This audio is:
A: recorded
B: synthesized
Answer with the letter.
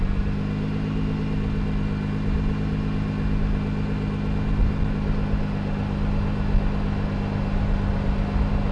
A